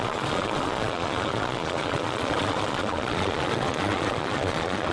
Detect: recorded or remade remade